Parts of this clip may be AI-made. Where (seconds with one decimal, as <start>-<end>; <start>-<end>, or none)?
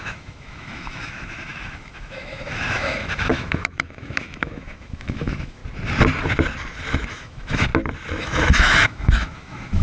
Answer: 0.0-5.6; 7.1-7.7; 8.2-9.8